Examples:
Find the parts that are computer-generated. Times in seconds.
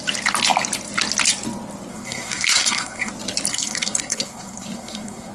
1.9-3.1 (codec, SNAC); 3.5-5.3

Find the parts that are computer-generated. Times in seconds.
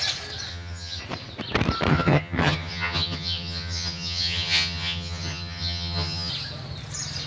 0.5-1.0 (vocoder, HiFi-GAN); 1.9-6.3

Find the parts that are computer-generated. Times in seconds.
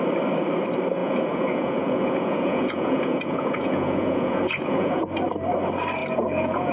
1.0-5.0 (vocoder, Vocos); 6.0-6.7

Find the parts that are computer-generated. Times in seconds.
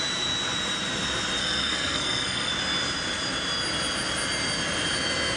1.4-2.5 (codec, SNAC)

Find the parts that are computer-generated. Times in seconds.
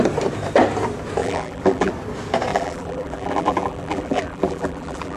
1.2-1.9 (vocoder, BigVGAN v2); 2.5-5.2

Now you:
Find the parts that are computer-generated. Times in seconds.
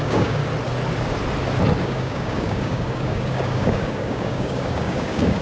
0.0-0.4 (codec, DAC); 1.8-5.4